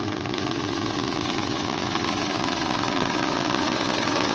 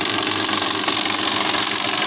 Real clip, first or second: second